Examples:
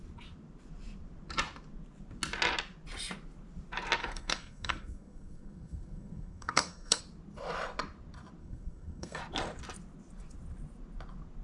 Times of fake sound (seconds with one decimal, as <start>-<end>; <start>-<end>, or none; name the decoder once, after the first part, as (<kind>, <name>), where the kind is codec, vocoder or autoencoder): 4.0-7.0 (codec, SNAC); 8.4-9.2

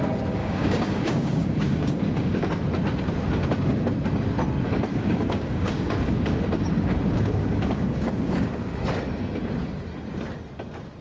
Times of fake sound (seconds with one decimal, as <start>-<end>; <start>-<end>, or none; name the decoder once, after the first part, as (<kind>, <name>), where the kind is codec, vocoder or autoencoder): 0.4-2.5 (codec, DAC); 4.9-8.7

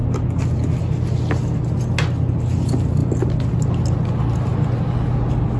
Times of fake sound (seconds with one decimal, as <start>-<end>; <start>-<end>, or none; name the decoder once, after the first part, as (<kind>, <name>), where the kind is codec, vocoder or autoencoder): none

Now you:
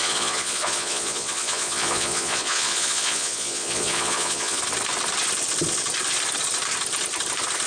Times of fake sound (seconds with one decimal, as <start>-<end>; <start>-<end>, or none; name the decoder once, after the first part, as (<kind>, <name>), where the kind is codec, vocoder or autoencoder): 0.0-4.6 (vocoder, Vocos)

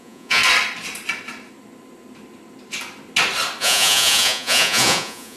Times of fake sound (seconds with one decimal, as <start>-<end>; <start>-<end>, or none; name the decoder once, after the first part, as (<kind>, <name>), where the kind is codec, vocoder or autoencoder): 0.0-0.4 (vocoder, Vocos); 3.6-5.4

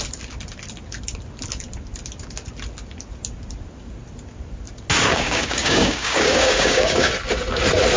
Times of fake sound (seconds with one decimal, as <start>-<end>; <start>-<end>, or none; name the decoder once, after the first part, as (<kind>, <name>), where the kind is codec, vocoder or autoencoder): 5.1-7.1 (codec, DAC)

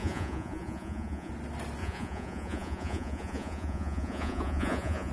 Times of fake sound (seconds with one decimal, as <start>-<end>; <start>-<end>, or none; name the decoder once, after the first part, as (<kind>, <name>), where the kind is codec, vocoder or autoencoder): 0.0-1.3 (vocoder, Vocos); 1.8-5.1